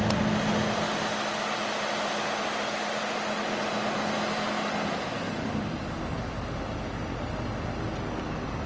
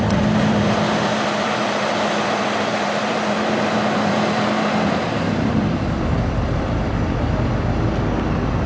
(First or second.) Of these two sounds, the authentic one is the first